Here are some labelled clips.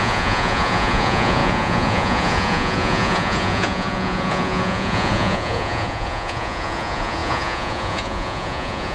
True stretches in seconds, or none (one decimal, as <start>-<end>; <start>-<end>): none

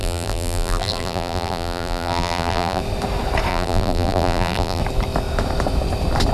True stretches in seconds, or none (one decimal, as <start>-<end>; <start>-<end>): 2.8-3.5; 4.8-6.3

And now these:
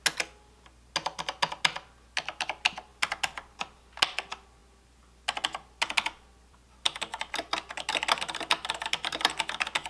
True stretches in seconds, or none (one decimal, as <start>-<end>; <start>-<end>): 0.0-9.9